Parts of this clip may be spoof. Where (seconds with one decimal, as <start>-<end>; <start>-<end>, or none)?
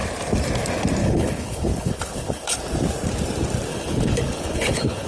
1.0-2.6; 3.7-5.1